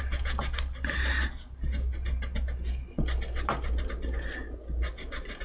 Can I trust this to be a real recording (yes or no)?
yes